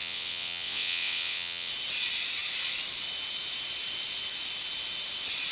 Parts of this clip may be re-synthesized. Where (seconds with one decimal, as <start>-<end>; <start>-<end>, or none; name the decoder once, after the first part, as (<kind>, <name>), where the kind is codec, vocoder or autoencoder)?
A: 0.0-1.7 (vocoder, WaveNeXt)